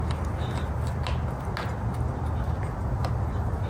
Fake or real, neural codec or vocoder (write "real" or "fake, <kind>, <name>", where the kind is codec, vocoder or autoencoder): real